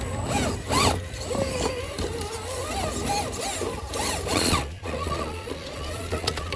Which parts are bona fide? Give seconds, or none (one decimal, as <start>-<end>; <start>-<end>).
0.0-4.3

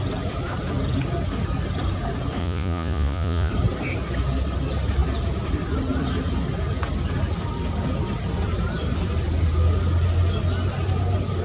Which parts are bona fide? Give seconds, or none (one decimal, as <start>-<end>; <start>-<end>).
0.0-2.4; 3.5-11.4

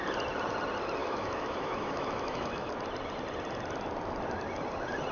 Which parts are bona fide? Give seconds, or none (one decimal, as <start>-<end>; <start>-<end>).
0.0-1.0; 2.7-5.1

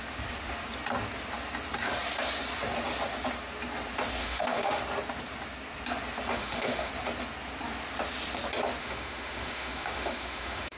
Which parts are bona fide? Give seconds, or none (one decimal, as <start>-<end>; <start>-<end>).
0.0-4.2; 4.8-6.3; 6.9-8.8